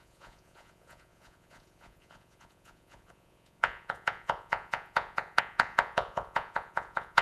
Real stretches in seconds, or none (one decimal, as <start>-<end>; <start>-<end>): none